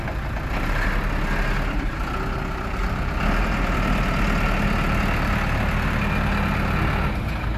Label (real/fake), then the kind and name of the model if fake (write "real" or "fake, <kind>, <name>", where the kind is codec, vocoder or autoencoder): real